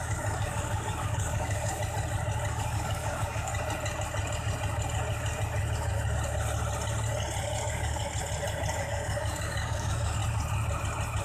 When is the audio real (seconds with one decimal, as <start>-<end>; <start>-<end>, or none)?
1.8-2.5; 3.5-7.6; 8.0-8.8; 10.2-11.2